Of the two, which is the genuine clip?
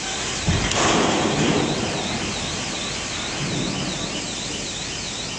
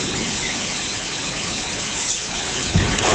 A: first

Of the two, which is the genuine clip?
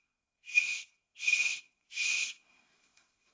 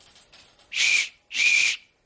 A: second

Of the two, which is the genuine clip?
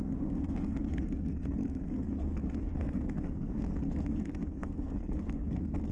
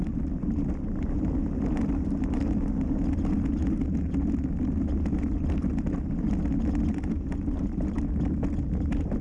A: second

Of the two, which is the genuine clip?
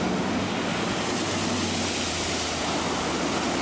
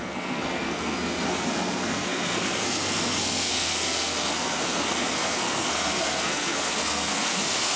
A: first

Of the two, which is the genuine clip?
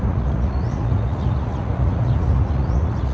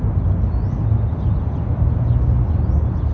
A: second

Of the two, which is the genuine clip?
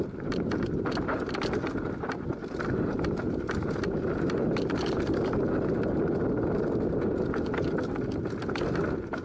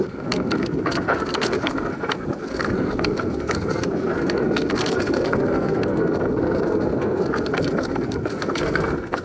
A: first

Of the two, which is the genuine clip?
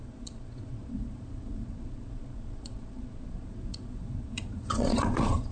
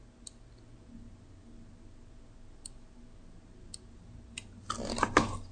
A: second